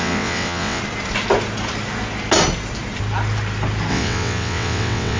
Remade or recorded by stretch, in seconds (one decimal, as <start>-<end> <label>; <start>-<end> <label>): 0.0-0.8 remade; 0.8-3.9 recorded; 3.9-5.2 remade